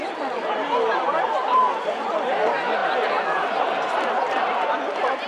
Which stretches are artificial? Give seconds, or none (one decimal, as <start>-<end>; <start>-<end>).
2.8-3.5